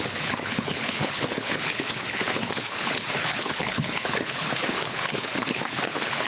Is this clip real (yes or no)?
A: no